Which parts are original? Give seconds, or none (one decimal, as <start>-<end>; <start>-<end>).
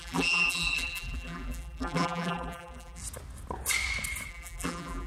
3.0-4.3